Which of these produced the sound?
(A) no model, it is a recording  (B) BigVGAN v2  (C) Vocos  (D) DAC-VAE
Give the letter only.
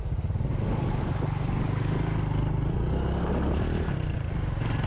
A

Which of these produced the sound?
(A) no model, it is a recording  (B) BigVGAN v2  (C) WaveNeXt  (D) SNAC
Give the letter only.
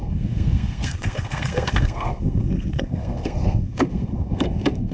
D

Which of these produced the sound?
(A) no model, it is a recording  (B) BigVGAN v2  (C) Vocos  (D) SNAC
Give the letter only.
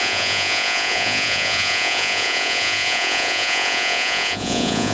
C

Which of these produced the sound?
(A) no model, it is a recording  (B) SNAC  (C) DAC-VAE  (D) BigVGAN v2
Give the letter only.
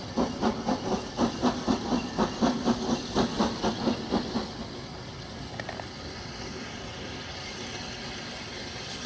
A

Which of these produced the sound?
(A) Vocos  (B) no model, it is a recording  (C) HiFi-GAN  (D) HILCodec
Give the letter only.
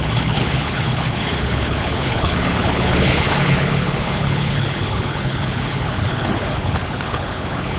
D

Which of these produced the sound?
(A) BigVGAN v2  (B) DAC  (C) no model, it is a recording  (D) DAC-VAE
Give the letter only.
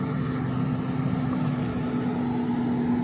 C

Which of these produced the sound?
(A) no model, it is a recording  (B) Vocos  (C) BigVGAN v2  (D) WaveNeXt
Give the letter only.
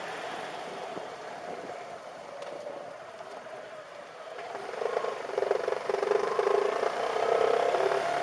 C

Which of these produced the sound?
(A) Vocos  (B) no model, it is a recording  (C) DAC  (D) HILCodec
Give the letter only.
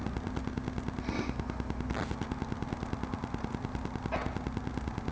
B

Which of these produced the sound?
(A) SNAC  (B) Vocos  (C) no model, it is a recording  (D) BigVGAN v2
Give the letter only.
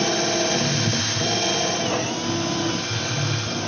C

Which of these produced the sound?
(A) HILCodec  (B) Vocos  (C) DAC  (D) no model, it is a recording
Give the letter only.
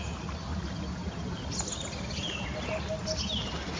D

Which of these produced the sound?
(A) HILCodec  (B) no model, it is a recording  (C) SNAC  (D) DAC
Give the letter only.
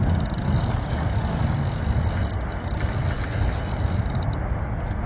B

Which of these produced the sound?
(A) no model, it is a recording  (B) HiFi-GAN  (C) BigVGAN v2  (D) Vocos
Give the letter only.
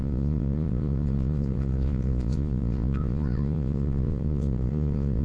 D